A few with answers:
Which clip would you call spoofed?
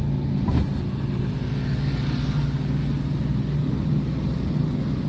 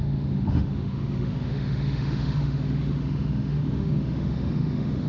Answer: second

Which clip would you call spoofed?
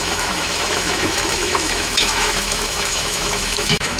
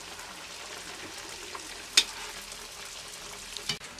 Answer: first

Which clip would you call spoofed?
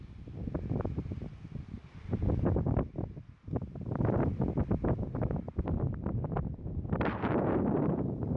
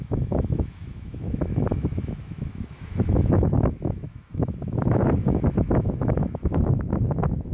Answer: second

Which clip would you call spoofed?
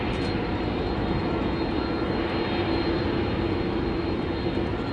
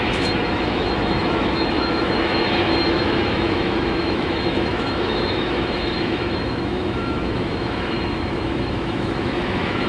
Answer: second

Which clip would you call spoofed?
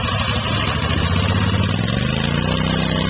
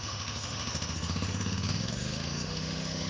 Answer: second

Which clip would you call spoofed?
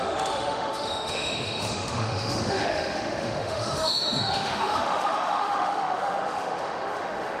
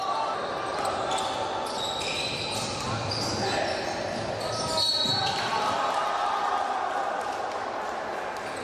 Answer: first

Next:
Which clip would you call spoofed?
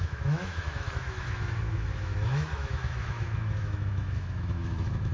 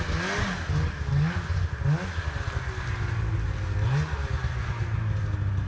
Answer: first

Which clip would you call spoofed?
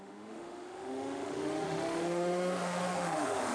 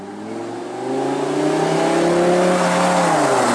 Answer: first